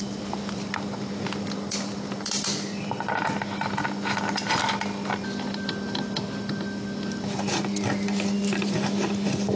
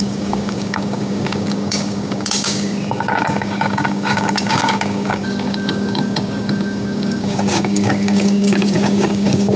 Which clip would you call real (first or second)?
first